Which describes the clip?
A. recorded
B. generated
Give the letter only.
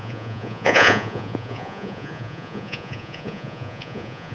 B